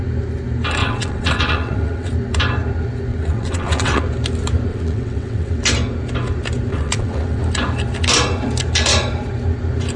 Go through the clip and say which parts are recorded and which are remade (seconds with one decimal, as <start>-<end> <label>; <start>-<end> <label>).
0.0-0.8 recorded; 0.8-2.1 remade; 2.1-3.1 recorded; 3.1-4.0 remade; 4.0-4.7 recorded; 4.7-5.6 remade; 5.6-6.7 recorded; 6.7-7.4 remade; 7.4-10.0 recorded